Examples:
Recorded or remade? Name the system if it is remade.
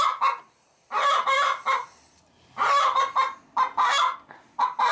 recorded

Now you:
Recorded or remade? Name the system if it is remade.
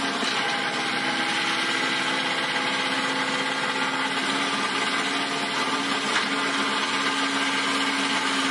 recorded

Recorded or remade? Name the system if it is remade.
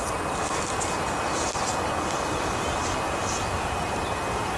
recorded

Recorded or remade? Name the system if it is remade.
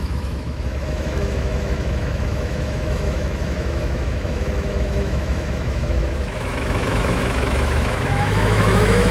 remade, autoencoder, DAC-VAE